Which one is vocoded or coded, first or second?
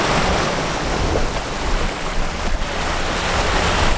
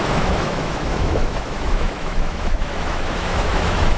second